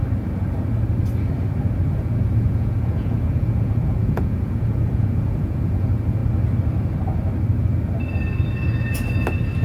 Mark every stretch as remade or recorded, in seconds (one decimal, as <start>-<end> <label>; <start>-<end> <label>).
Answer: 0.0-2.4 recorded; 2.4-6.2 remade; 6.2-9.6 recorded